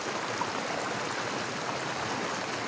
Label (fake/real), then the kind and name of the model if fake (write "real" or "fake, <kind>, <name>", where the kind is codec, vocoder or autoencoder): real